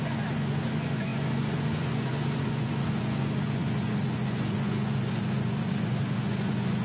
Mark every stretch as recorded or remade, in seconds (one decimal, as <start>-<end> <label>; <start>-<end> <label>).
0.0-6.8 remade